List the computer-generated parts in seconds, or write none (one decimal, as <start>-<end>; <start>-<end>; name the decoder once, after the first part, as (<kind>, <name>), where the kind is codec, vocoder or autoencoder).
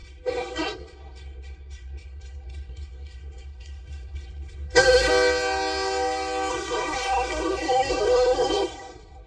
0.0-5.1 (codec, SNAC); 6.5-9.3